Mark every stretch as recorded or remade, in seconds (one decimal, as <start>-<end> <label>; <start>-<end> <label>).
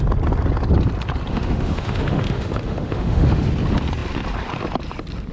0.0-1.3 recorded; 1.3-3.5 remade; 3.5-5.3 recorded